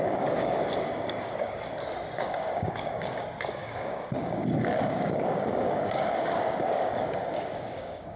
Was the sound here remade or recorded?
remade